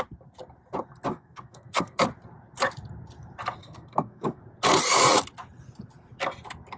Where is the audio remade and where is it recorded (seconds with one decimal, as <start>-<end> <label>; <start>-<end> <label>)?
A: 0.0-1.1 recorded; 1.1-2.0 remade; 2.0-3.6 recorded; 3.6-4.4 remade; 4.4-6.8 recorded